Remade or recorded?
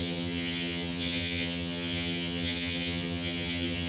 remade